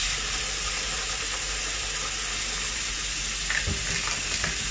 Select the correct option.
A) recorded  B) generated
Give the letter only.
A